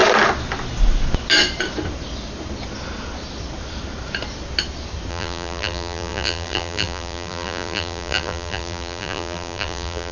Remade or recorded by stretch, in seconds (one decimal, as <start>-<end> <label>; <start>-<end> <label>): 0.0-5.1 recorded; 5.1-10.1 remade